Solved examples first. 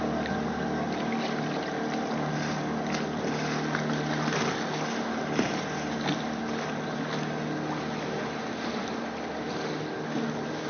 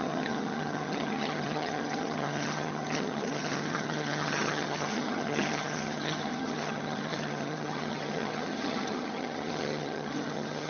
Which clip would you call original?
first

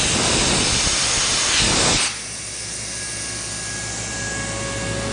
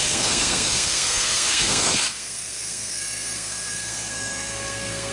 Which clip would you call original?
first